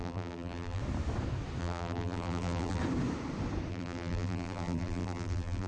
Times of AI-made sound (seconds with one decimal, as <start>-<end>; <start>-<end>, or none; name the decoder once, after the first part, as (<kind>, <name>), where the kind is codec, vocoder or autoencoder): 0.0-0.8 (vocoder, BigVGAN v2); 1.6-2.8; 3.7-5.7